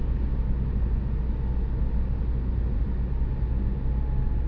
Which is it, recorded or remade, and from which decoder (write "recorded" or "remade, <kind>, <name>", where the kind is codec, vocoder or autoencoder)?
recorded